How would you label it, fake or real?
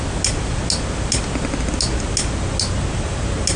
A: real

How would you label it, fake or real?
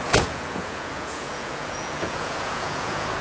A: fake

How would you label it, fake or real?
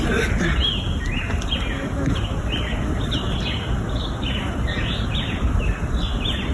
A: real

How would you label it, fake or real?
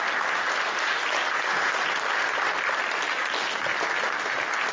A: real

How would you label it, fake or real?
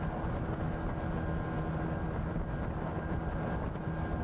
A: real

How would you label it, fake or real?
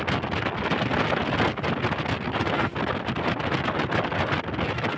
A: real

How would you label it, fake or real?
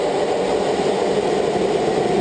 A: real